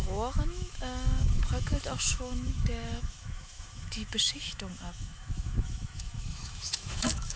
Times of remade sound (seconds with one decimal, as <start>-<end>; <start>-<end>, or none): 0.0-7.4